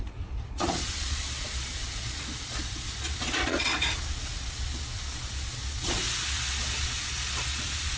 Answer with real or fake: fake